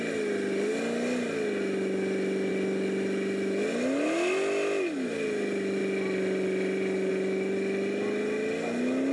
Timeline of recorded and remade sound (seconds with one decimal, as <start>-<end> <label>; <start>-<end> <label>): 0.0-9.1 recorded